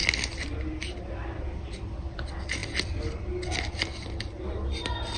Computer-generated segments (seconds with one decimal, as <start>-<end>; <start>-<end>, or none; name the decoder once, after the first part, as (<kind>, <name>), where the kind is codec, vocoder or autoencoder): none